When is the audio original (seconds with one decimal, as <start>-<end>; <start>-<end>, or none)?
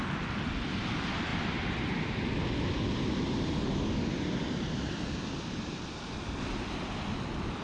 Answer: 0.0-7.6